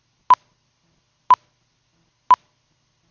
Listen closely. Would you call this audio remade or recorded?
recorded